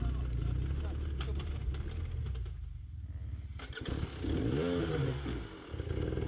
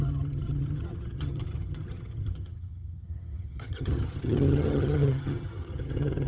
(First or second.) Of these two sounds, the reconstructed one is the second